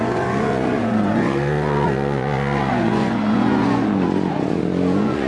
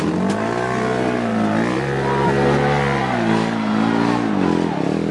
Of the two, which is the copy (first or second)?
first